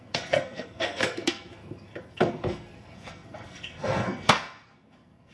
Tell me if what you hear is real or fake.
fake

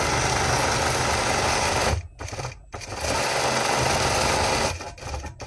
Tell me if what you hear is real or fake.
real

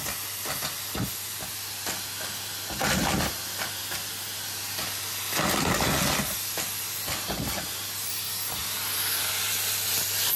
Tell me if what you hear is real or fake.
real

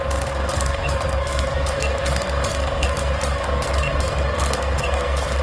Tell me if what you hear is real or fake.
fake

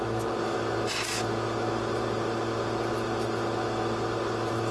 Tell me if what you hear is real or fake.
real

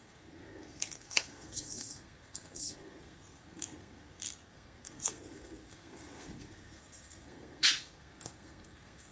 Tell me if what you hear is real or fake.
fake